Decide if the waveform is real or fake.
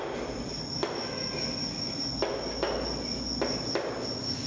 real